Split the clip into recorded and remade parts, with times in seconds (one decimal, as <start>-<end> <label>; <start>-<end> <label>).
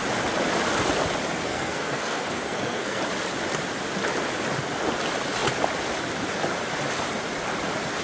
0.0-1.5 recorded; 1.5-3.0 remade; 3.0-8.0 recorded